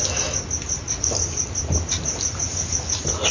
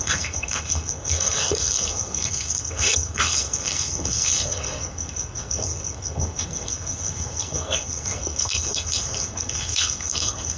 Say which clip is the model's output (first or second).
second